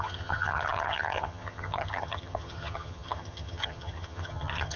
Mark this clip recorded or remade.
remade